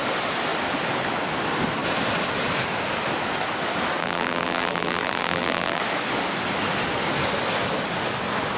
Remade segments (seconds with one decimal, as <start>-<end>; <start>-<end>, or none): 4.0-5.8